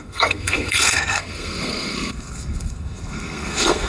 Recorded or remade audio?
remade